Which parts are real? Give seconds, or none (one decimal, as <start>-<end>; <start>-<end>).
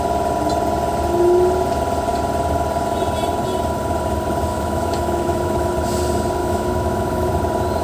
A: 0.0-4.5; 5.7-6.4; 7.3-7.8